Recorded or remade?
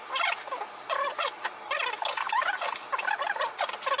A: recorded